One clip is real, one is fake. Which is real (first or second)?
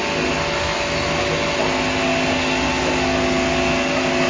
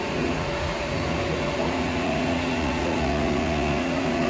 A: first